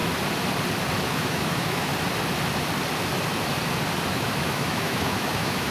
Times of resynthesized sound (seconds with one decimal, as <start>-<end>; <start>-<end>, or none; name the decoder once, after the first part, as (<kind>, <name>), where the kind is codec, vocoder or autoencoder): 1.0-1.9 (autoencoder, DAC-VAE); 4.1-5.7